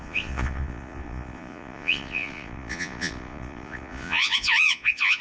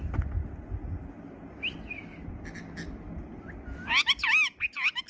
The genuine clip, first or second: second